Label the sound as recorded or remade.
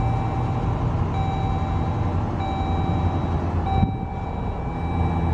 recorded